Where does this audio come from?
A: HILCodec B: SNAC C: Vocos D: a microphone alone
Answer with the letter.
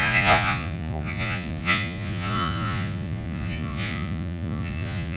C